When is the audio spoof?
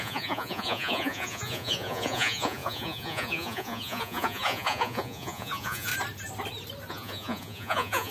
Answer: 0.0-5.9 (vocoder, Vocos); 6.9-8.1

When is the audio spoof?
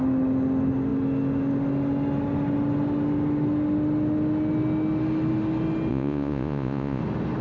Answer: 5.9-7.0 (vocoder, Vocos)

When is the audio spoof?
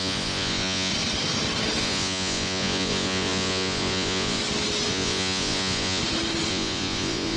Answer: 0.0-0.9 (vocoder, Vocos); 1.8-4.4; 4.9-6.0; 6.5-7.4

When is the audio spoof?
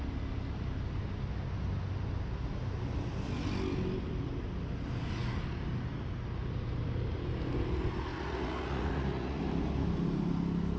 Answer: 8.1-9.4 (vocoder, Vocos)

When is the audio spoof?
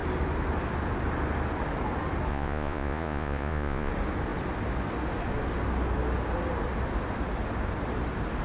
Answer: 2.3-3.9 (vocoder, Vocos)